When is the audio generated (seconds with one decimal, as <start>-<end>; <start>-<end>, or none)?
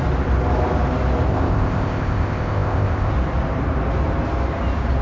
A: 1.3-3.1